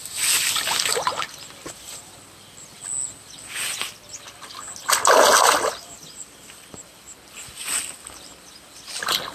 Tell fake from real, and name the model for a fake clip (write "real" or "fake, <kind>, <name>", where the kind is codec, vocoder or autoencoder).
real